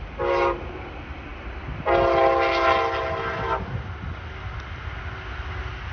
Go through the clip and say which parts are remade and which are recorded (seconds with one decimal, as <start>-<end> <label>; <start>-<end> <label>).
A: 0.0-5.9 recorded